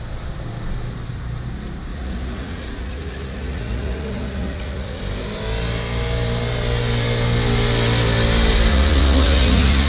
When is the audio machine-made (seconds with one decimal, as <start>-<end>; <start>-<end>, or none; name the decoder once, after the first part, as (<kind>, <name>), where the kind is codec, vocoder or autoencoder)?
1.9-5.0 (vocoder, Vocos); 8.7-9.9